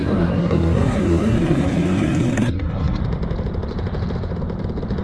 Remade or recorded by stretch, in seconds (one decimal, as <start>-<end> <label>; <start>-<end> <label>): 0.0-3.0 remade; 3.0-5.0 recorded